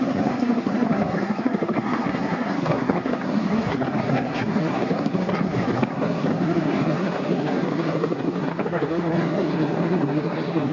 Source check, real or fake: fake